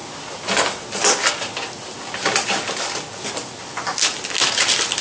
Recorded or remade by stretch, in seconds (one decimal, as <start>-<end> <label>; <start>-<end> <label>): 0.0-5.0 recorded